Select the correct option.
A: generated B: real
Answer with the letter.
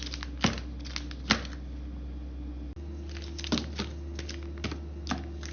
B